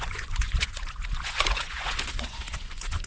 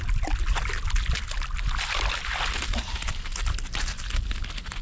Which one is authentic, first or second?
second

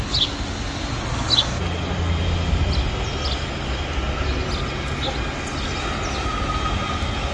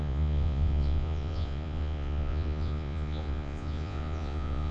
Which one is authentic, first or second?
first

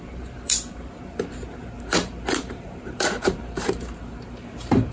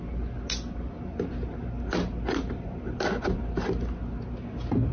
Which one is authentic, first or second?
second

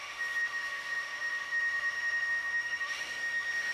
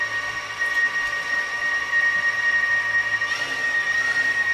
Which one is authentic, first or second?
second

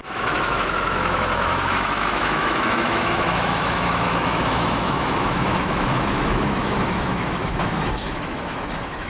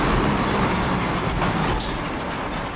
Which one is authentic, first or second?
second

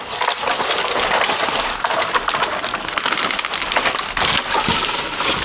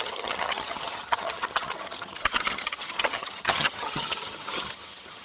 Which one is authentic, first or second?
first